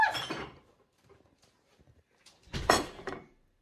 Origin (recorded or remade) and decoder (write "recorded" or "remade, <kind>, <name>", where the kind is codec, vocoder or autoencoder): remade, vocoder, BigVGAN v2